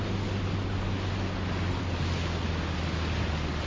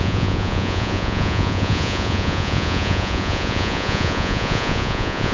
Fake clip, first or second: second